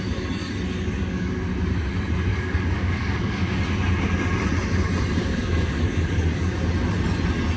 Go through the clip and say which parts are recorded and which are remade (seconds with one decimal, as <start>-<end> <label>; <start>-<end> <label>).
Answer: 0.0-0.4 recorded; 0.4-1.3 remade; 1.3-2.3 recorded; 2.3-3.6 remade; 3.6-5.2 recorded; 5.2-6.6 remade; 6.6-7.6 recorded